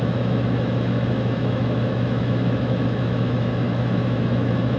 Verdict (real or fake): fake